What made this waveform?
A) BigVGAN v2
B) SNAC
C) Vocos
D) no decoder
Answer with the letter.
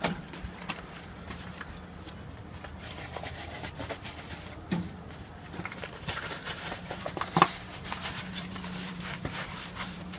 A